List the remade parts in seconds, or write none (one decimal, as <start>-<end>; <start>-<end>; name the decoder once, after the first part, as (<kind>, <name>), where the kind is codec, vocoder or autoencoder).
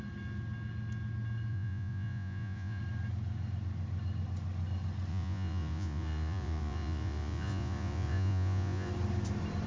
1.5-2.8 (vocoder, Vocos); 5.1-8.9